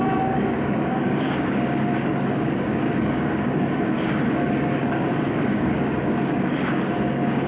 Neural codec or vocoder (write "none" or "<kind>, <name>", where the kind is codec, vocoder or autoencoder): codec, DAC